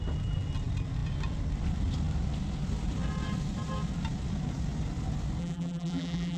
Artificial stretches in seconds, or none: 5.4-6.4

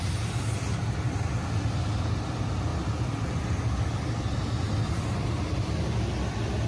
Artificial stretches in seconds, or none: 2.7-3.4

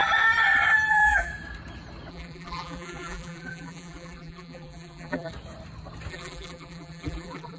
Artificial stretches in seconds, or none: 0.9-1.3; 2.1-5.3; 6.1-7.6

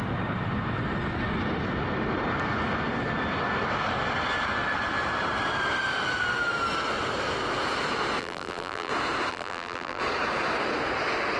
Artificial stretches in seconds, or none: 8.2-8.9; 9.3-10.0

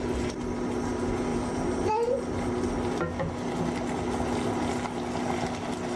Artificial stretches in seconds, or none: 1.3-2.2